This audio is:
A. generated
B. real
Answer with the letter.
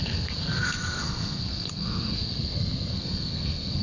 A